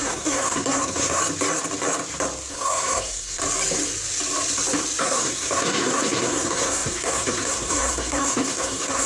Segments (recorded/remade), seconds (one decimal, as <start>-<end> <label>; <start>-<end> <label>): 0.0-1.2 remade; 1.2-2.5 recorded; 2.5-3.4 remade; 3.4-5.0 recorded; 5.0-9.1 remade